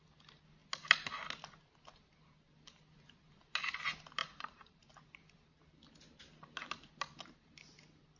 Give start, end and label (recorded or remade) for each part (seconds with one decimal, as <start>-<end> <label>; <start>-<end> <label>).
0.0-4.2 recorded; 4.2-4.8 remade; 4.8-8.2 recorded